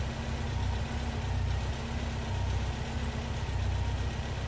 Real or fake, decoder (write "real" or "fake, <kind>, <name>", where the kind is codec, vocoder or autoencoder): real